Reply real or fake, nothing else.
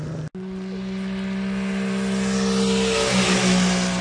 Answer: real